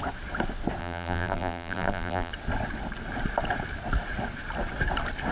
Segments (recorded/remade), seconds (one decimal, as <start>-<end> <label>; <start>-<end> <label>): 0.0-0.8 recorded; 0.8-2.3 remade; 2.3-5.3 recorded